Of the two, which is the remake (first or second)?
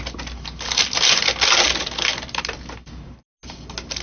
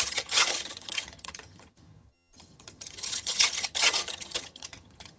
second